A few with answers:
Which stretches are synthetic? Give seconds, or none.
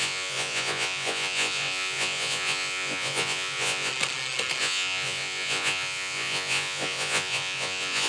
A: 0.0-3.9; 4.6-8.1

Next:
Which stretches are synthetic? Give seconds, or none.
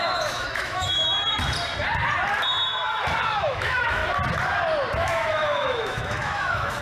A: 0.0-1.0; 3.4-4.0; 5.0-6.8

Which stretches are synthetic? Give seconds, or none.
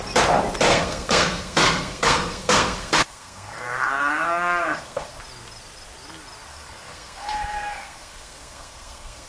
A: 0.7-5.2; 6.5-9.3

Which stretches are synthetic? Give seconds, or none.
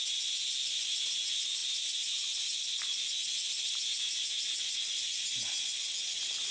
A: none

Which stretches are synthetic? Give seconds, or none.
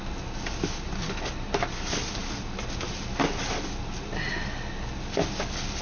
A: none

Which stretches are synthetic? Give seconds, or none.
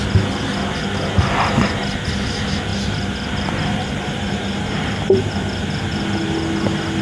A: 2.7-5.3